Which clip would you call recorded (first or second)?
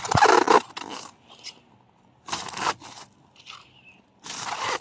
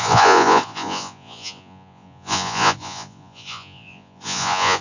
first